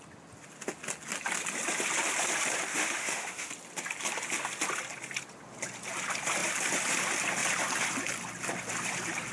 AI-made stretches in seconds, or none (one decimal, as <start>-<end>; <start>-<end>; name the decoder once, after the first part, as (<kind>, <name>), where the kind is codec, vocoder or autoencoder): 2.7-3.5 (autoencoder, DAC-VAE)